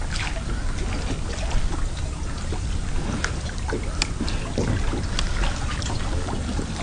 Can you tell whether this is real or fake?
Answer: real